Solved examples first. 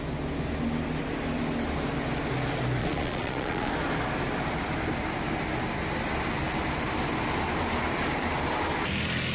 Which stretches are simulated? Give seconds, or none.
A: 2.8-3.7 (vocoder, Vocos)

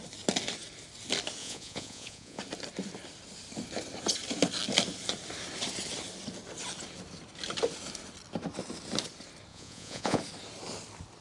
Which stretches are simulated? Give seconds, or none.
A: 1.4-2.4 (vocoder, Vocos); 9.5-10.2

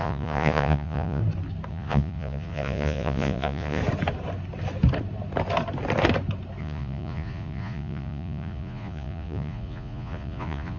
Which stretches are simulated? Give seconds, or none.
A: 0.0-1.2 (vocoder, Vocos); 1.7-3.8; 6.6-10.8

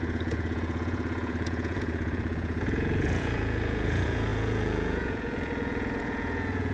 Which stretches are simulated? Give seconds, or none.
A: 0.0-6.7 (vocoder, Vocos)

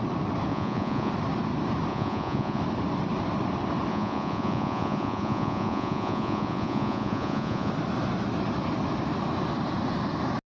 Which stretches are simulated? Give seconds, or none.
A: 0.5-1.1 (vocoder, Vocos); 1.9-2.6; 3.9-7.7

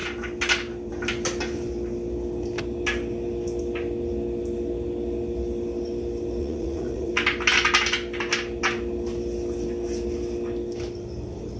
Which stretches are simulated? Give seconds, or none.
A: 6.4-7.1 (vocoder, Vocos)